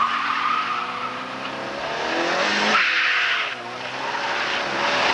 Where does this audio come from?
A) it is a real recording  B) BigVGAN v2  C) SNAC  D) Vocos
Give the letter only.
A